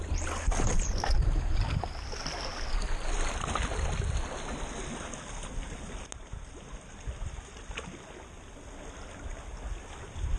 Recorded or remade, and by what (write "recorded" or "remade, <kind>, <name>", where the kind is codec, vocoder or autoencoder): recorded